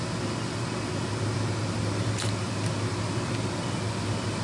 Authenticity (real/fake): real